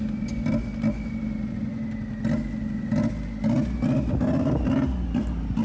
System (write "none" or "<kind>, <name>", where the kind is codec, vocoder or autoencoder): none